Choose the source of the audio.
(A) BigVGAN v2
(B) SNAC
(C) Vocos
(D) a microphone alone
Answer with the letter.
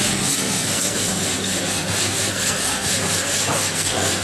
B